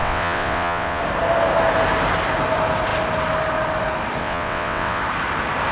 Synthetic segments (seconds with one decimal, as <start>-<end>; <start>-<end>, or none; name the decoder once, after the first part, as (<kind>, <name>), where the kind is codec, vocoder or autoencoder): 0.0-1.0 (vocoder, WaveNeXt); 4.2-5.0